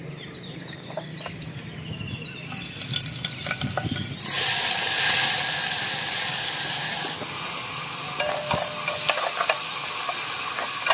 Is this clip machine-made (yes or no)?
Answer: no